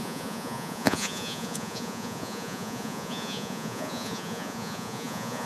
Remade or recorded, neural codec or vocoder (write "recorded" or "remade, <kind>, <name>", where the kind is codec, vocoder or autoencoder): remade, vocoder, Vocos